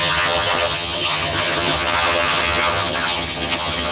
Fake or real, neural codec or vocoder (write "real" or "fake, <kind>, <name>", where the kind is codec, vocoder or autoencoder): fake, vocoder, HiFi-GAN